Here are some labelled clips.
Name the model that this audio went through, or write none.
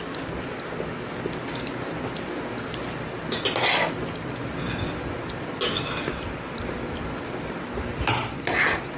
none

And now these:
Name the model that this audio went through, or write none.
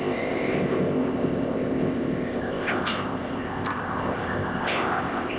codec, ZipCodec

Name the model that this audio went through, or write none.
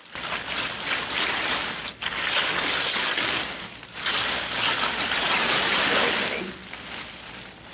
none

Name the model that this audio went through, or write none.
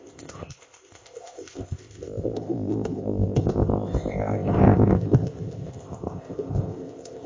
codec, ZipCodec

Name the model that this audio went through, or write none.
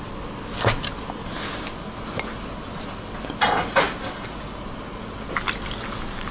none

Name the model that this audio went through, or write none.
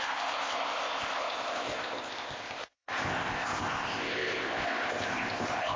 codec, ZipCodec